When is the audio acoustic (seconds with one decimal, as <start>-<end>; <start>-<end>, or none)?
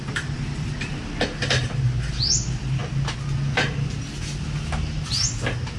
1.0-2.1; 2.8-5.8